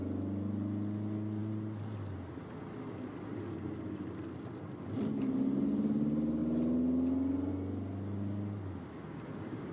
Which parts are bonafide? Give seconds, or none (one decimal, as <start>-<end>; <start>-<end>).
0.0-9.7